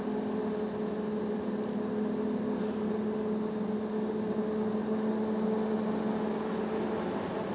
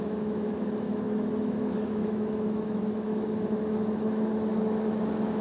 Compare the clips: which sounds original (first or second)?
first